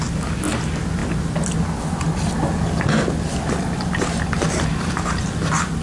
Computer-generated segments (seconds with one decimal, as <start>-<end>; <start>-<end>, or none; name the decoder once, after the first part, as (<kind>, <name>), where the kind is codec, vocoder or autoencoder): none